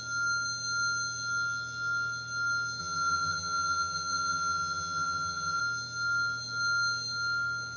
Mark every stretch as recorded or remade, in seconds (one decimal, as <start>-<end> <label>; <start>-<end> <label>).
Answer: 0.0-2.8 recorded; 2.8-5.6 remade; 5.6-7.8 recorded